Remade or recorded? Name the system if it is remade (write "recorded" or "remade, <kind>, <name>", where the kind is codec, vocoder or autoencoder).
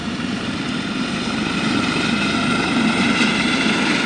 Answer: recorded